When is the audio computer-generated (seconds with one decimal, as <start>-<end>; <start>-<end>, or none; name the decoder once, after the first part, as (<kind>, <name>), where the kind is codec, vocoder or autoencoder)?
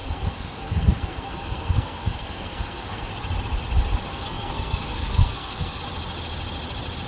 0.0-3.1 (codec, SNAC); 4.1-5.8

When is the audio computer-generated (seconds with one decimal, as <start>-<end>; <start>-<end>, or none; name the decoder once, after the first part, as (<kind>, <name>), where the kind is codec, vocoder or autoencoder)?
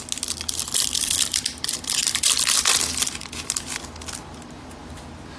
none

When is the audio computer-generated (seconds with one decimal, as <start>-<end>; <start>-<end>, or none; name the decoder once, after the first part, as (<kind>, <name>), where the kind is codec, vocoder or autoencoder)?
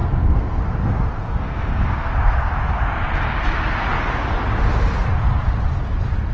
0.0-0.6 (codec, SNAC); 1.2-2.5